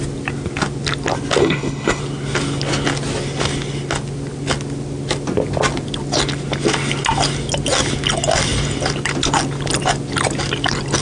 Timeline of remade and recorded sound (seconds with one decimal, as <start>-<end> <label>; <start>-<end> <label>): 0.0-1.4 recorded; 1.4-2.0 remade; 2.0-11.0 recorded